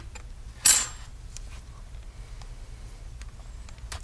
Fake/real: real